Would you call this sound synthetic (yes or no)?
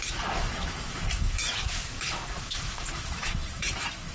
yes